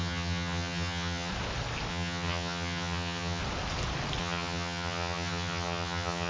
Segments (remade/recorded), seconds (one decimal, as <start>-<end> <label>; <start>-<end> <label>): 0.0-1.3 remade; 1.3-1.9 recorded; 1.9-3.4 remade; 3.4-4.2 recorded; 4.2-6.3 remade